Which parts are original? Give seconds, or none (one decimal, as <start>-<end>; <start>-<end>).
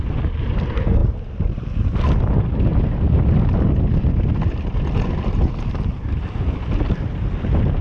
0.0-7.8